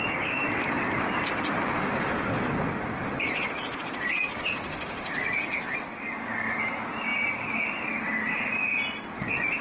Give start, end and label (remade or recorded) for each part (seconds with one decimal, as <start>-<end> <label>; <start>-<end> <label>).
0.0-0.4 recorded; 0.4-5.4 remade; 5.4-9.6 recorded